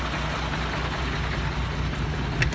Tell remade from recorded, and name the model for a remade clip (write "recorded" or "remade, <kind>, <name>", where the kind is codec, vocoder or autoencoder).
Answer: recorded